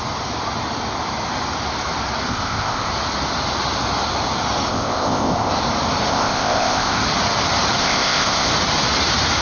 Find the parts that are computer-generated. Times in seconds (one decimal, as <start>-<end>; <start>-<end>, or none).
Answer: 2.3-2.9; 4.7-5.5; 6.1-7.0; 7.8-8.5